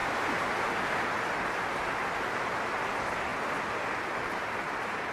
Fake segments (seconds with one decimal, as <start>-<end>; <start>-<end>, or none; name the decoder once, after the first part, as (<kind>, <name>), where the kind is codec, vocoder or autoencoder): 0.0-0.5 (vocoder, BigVGAN v2)